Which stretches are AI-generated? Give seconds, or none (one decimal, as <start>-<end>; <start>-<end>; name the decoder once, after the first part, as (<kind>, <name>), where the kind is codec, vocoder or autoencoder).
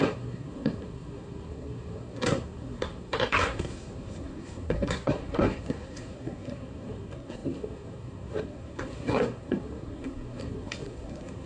0.0-11.5 (codec, SNAC)